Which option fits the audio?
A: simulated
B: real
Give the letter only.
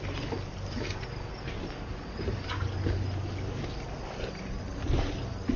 B